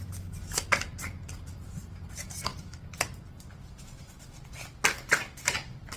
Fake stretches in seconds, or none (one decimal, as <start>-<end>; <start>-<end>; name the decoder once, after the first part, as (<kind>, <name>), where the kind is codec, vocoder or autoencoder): 0.0-2.5 (vocoder, BigVGAN v2)